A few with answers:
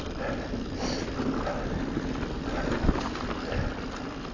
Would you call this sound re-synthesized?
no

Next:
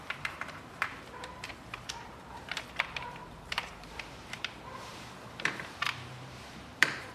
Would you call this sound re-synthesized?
yes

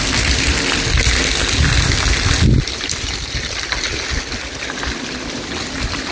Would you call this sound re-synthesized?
no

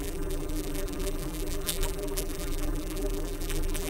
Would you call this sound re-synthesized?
yes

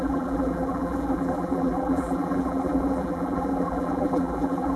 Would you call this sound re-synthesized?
yes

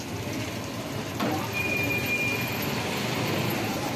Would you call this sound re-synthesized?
no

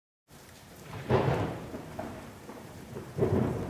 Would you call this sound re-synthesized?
yes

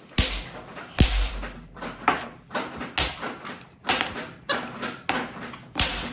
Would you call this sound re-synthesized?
no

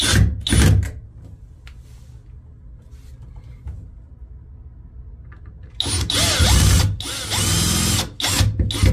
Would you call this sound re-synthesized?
no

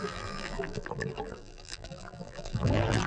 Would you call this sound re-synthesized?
yes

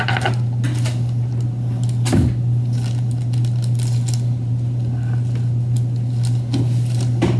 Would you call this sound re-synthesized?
no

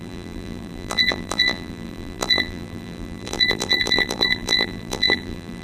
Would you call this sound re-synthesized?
yes